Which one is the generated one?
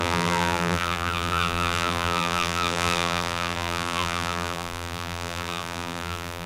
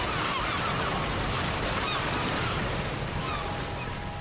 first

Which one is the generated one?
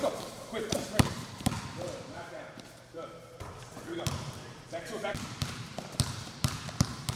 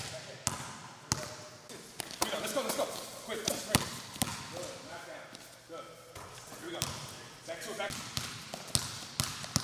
first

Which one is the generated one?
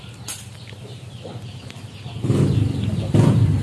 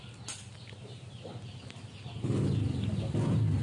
first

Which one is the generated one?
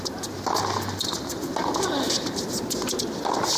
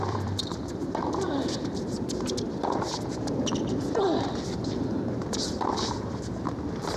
second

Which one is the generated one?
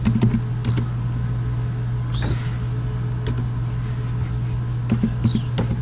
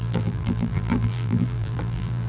second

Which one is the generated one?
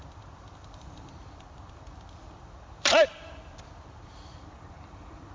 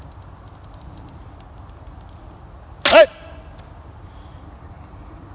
first